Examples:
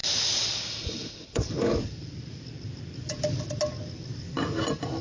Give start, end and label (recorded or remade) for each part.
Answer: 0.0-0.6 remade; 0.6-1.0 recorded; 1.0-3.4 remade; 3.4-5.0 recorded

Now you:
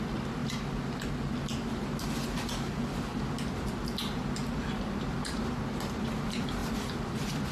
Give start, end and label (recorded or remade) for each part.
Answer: 0.0-4.4 recorded; 4.4-5.6 remade; 5.6-6.6 recorded; 6.6-7.5 remade